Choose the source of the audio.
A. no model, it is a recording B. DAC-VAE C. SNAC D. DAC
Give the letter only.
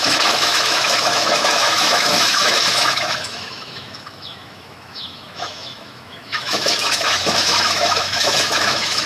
B